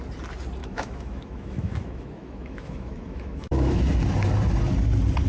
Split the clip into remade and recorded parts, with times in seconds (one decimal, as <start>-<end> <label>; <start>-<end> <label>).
0.0-0.6 recorded; 0.6-3.8 remade; 3.8-5.3 recorded